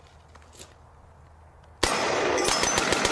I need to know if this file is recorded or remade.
recorded